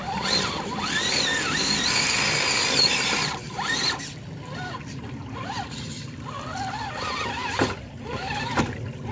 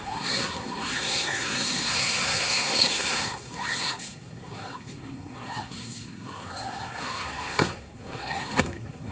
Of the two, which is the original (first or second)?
first